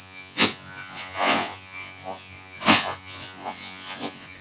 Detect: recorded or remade remade